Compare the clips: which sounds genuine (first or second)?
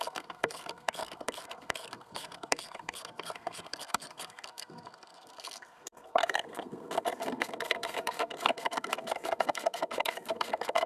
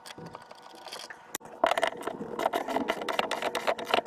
second